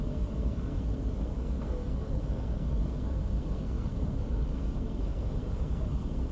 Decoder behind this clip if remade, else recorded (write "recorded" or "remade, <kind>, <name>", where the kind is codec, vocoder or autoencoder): remade, codec, SNAC